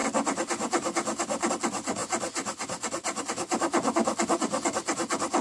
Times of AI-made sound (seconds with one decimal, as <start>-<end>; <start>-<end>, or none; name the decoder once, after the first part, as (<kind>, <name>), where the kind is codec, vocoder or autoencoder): none